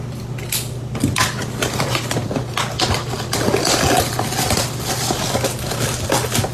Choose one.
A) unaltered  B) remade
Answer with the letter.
A